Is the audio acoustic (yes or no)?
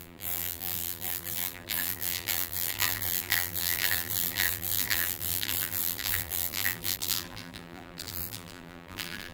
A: no